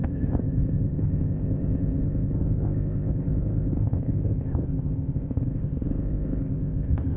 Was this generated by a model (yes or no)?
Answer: yes